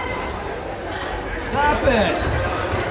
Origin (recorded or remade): recorded